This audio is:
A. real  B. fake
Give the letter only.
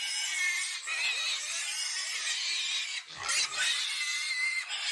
A